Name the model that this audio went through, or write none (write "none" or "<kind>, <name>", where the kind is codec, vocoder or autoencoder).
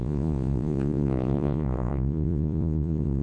vocoder, Vocos